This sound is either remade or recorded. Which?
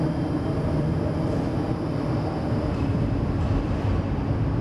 recorded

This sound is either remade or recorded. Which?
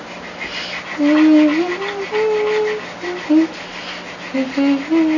recorded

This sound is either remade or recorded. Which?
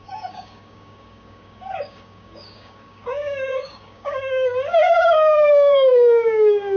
remade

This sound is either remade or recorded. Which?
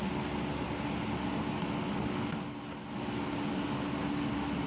recorded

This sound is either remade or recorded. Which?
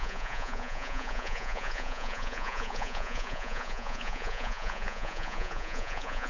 remade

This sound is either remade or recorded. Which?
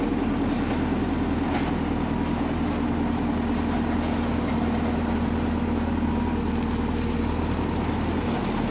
recorded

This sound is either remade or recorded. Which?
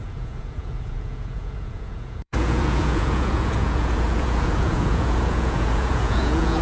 remade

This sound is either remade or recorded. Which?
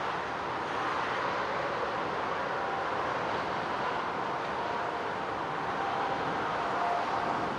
recorded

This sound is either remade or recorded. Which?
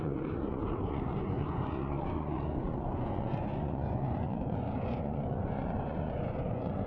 remade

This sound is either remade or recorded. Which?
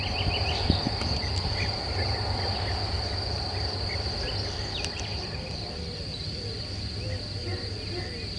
recorded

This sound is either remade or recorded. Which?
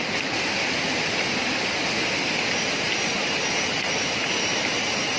recorded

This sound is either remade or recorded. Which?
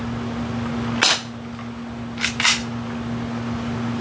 recorded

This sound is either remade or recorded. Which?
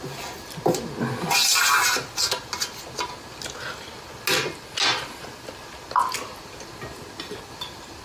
recorded